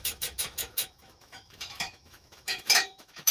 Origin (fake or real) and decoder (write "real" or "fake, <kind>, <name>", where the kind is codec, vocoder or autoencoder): fake, autoencoder, DAC-VAE